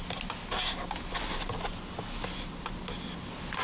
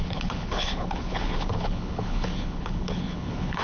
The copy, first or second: second